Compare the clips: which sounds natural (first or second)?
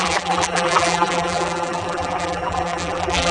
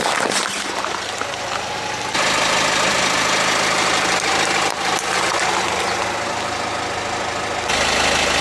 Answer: second